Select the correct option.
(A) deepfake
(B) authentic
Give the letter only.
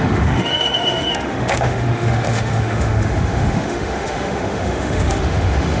A